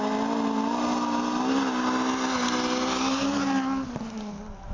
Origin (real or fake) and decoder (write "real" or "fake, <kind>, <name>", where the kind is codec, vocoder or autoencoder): real